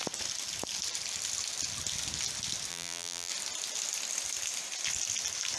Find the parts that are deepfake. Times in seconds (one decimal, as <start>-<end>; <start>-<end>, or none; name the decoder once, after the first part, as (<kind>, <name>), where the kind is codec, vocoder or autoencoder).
2.7-3.3 (vocoder, BigVGAN v2)